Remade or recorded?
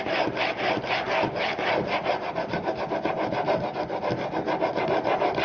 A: recorded